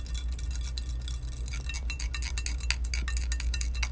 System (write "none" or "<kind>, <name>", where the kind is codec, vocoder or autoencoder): none